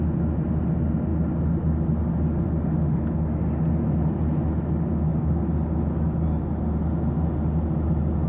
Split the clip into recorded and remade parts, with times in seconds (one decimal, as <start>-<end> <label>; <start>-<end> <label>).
0.0-8.3 recorded